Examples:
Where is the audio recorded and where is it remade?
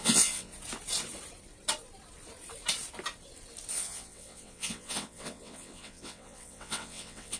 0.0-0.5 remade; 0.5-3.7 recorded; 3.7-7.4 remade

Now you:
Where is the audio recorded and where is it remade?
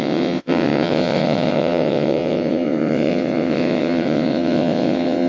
0.0-5.3 remade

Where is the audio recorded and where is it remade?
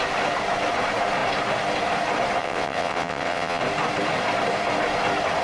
0.0-2.4 recorded; 2.4-3.6 remade; 3.6-5.4 recorded